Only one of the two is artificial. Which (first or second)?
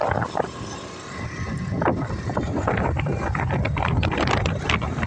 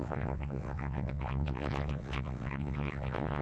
second